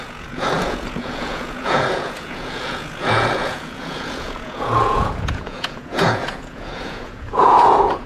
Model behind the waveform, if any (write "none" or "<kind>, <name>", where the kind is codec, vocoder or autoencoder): vocoder, Vocos